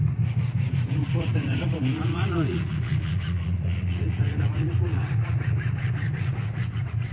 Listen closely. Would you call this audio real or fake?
fake